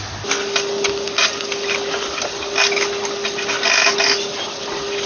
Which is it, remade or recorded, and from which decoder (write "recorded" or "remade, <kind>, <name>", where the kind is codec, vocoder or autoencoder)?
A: recorded